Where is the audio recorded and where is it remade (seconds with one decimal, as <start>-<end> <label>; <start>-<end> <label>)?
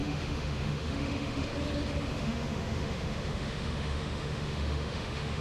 0.0-1.5 remade; 1.5-2.1 recorded; 2.1-5.4 remade